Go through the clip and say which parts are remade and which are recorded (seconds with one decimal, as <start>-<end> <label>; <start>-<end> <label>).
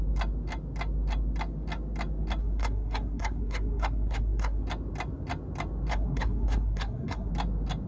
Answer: 0.0-2.4 recorded; 2.4-4.6 remade; 4.6-5.9 recorded; 5.9-7.3 remade; 7.3-7.9 recorded